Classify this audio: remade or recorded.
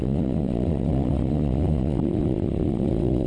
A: remade